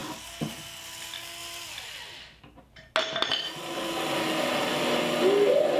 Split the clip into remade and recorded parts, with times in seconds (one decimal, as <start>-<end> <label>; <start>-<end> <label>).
0.0-5.8 recorded